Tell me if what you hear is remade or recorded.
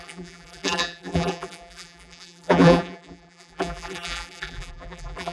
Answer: remade